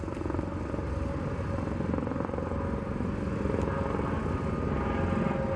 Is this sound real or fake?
real